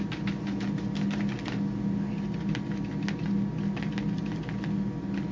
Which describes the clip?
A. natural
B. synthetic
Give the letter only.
A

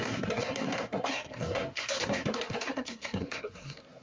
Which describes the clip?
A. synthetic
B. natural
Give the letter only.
A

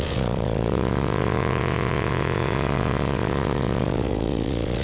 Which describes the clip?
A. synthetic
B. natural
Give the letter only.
A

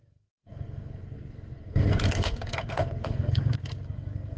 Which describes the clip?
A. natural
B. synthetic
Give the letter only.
B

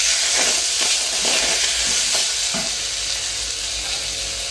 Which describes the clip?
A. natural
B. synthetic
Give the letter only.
A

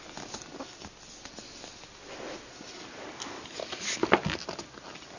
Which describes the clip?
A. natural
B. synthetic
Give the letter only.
A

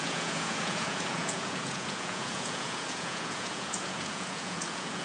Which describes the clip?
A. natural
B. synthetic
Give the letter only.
B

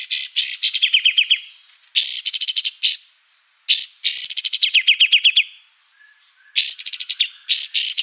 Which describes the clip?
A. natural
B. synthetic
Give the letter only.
A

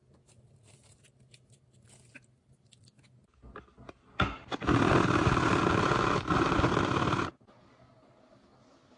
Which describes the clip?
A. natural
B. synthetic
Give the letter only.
A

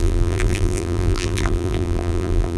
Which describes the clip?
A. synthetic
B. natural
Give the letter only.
A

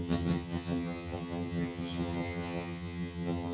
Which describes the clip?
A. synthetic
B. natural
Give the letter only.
A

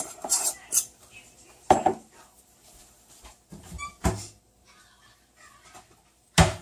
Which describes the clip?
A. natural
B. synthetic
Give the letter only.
B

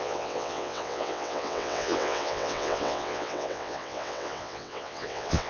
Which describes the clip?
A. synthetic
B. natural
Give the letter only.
A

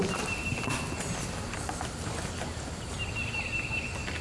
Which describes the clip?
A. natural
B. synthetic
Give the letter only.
A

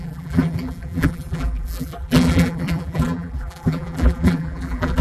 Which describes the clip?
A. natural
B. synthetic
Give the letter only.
B